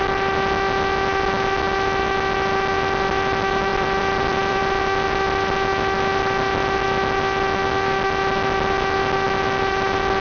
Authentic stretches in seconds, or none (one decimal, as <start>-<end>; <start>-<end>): 0.0-3.7; 4.6-10.2